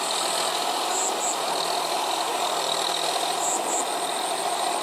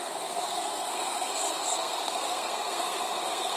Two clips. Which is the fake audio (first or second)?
second